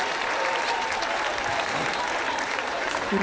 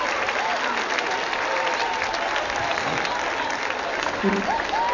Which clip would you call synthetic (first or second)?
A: first